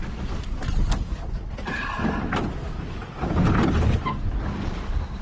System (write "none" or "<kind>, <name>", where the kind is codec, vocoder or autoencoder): none